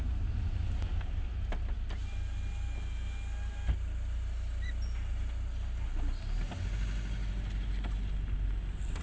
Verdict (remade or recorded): recorded